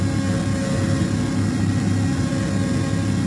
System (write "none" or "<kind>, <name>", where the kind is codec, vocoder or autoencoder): none